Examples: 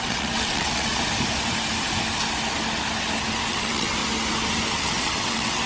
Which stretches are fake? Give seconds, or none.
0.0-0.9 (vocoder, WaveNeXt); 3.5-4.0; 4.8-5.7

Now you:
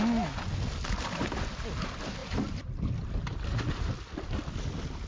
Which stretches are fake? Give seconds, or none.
none

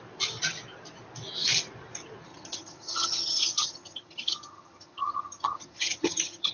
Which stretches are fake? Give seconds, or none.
2.3-6.5 (vocoder, HiFi-GAN)

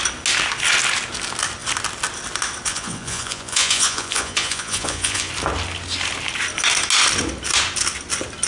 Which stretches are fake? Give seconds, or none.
2.7-5.3 (vocoder, Vocos)

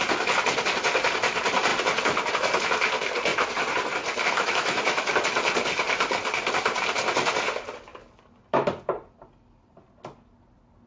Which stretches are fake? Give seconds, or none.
4.2-5.1 (autoencoder, DAC-VAE)

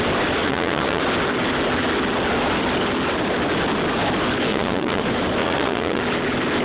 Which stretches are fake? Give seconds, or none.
0.4-1.0 (vocoder, Vocos); 4.5-5.0; 5.4-6.0

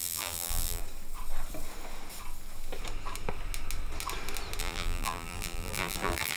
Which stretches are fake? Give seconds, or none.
0.0-0.8 (vocoder, BigVGAN v2); 4.6-6.4

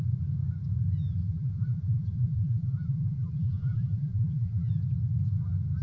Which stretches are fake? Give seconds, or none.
1.2-4.7 (vocoder, BigVGAN v2)